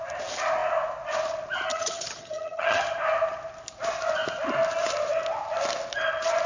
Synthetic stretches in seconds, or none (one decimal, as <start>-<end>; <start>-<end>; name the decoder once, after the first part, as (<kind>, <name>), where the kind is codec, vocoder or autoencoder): 1.7-2.8 (vocoder, HiFi-GAN)